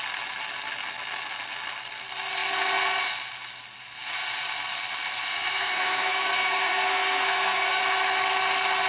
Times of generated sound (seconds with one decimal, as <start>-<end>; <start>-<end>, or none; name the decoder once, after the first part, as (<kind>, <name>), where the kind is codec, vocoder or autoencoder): 5.3-7.8 (codec, SNAC)